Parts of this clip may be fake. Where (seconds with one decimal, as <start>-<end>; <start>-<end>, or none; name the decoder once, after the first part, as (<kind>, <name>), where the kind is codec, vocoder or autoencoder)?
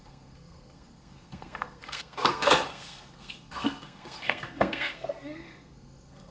0.0-6.3 (codec, SNAC)